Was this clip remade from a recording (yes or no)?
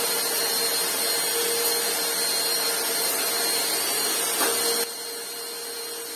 no